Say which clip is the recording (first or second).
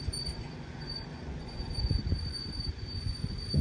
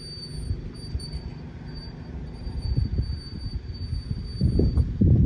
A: second